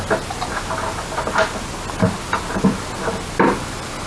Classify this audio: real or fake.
real